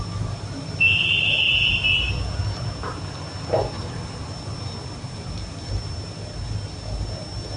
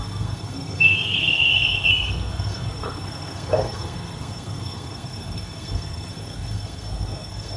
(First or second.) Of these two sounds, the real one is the first